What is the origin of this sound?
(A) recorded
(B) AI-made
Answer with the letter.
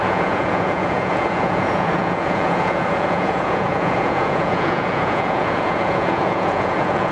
B